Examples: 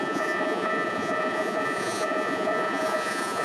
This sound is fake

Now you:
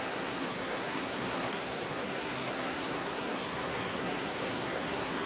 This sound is fake